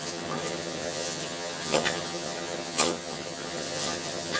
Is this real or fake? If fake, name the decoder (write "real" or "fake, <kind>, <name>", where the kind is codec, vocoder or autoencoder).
fake, vocoder, HiFi-GAN